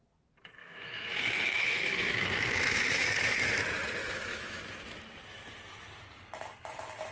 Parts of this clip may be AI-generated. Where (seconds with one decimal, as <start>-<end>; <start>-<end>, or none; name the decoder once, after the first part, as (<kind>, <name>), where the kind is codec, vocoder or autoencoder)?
0.6-3.6 (autoencoder, DAC-VAE); 4.0-4.6